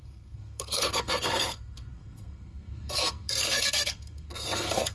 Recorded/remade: remade